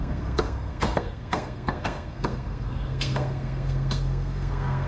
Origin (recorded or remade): remade